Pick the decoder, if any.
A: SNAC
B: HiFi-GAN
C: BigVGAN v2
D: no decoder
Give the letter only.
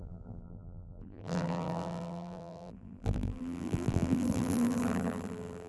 C